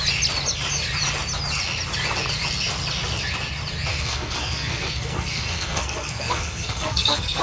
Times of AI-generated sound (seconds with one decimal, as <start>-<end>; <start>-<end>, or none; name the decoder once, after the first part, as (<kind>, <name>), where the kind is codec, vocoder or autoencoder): 3.9-7.4 (codec, SNAC)